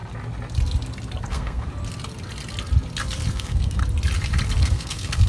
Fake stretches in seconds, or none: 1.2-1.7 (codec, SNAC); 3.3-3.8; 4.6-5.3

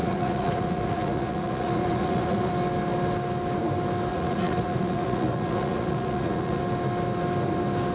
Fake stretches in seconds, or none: 0.0-2.5 (vocoder, Vocos); 4.1-6.6

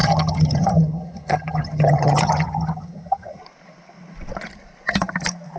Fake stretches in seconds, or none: 0.0-3.4 (vocoder, HiFi-GAN)